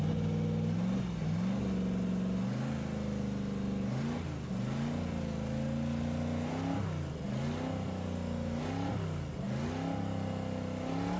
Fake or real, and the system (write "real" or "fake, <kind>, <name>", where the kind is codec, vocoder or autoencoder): real